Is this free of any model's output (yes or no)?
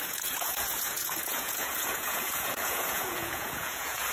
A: no